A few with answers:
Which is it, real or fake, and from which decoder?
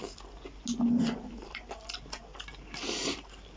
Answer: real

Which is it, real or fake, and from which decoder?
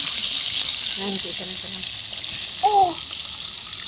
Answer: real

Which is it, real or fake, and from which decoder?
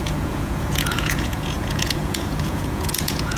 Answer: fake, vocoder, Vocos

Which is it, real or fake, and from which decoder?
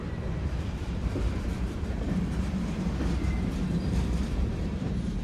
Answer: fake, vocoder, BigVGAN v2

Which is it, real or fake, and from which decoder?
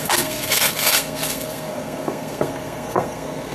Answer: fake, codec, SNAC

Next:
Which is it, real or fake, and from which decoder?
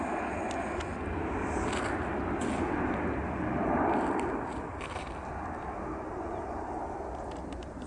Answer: real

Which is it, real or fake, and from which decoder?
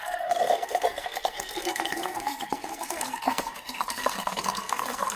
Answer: fake, codec, SNAC